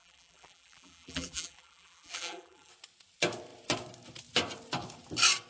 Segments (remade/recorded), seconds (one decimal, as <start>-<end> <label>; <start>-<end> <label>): 0.0-2.7 remade; 2.7-5.5 recorded